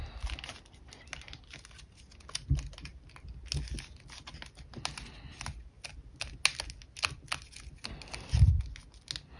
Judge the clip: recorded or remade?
recorded